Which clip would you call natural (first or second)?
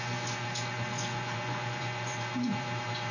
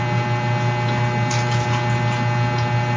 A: second